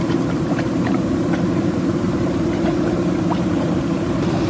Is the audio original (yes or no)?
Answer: no